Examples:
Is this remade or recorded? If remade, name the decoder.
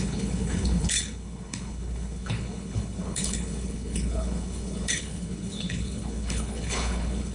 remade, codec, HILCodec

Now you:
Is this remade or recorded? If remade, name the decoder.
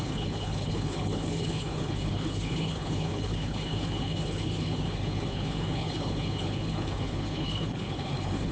remade, codec, HILCodec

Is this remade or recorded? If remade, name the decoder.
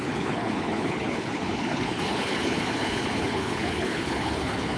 remade, codec, HILCodec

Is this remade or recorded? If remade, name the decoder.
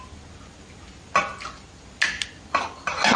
recorded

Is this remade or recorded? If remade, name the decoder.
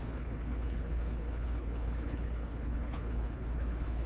remade, codec, HILCodec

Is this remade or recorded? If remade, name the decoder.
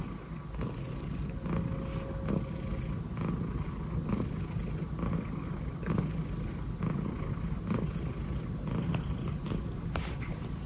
recorded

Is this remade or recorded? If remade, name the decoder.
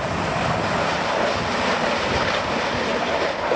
recorded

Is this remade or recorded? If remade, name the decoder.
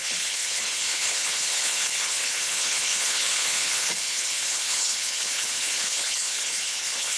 remade, codec, HILCodec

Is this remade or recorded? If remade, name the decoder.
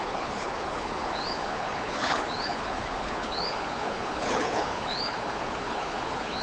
remade, codec, HILCodec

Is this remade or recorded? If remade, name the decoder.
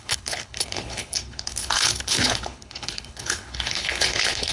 remade, codec, HILCodec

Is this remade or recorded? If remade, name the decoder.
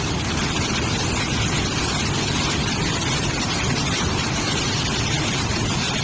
recorded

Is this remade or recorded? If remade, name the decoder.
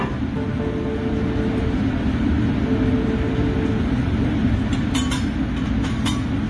recorded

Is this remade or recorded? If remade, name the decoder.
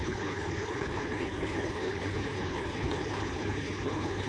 remade, codec, HILCodec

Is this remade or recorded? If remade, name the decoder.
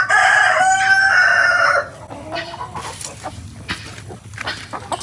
recorded